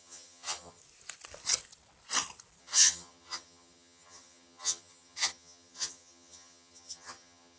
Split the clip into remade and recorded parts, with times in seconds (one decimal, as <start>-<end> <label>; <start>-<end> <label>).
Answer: 0.0-0.8 remade; 0.8-2.6 recorded; 2.6-7.6 remade